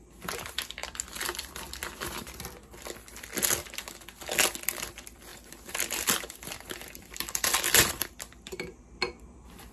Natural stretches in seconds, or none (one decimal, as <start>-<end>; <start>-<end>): 0.0-5.3; 8.8-9.7

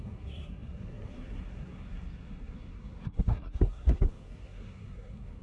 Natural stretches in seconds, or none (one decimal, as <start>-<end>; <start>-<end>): none

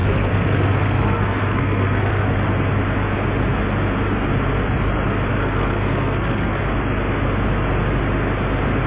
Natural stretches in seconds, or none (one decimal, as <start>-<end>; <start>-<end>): 2.1-5.3; 6.6-8.9

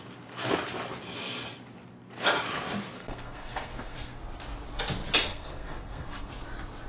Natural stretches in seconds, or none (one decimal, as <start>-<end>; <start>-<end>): 0.0-3.0; 4.2-5.3; 6.3-6.9

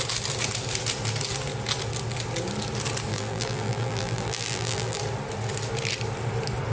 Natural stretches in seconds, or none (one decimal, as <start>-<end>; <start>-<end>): 0.0-3.1; 5.0-6.7

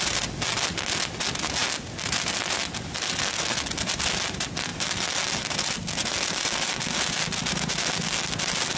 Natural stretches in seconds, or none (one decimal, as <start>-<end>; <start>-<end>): 0.0-8.8